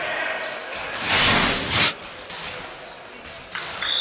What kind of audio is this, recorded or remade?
recorded